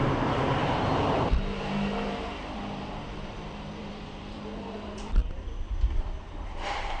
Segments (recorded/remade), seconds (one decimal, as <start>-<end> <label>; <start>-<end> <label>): 0.0-5.2 remade; 5.2-5.9 recorded; 5.9-7.0 remade